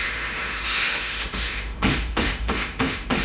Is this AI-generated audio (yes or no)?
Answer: yes